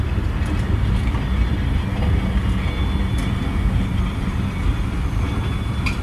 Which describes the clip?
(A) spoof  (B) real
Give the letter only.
B